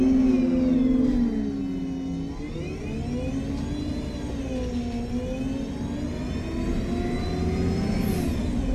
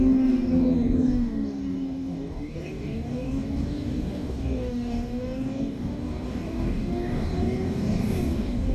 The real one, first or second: first